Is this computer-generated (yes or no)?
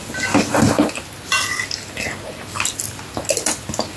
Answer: no